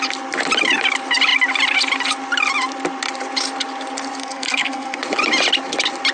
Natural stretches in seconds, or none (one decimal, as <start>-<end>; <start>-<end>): 0.0-4.2; 5.0-6.1